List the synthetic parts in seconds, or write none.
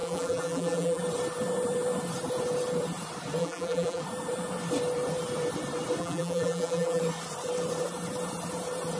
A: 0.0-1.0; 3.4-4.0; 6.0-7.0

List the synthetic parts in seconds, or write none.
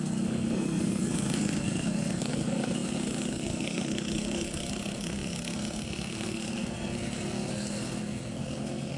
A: 0.0-9.0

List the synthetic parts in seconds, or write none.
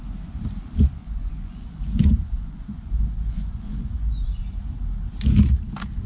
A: 1.0-4.4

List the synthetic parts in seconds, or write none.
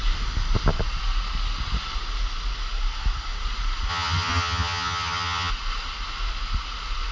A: 3.9-5.5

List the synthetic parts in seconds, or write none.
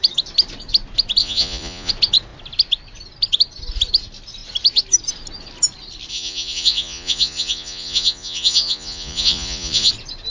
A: 1.2-1.9; 6.1-9.9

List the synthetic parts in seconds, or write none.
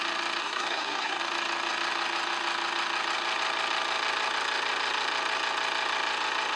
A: 0.4-1.2